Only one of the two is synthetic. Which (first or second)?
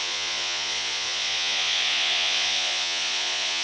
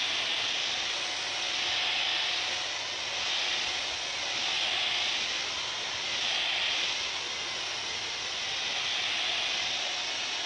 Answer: first